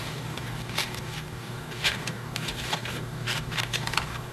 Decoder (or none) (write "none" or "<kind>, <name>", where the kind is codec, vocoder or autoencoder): codec, DAC